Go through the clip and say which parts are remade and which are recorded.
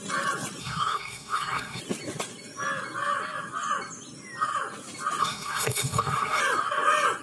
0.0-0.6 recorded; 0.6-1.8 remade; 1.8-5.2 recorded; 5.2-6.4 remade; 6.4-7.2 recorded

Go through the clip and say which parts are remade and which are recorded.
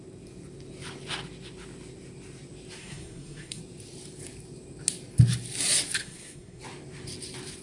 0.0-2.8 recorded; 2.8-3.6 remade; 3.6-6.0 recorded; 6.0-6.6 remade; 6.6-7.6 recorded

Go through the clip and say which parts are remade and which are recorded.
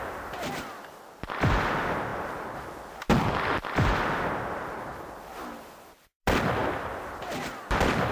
0.0-8.1 recorded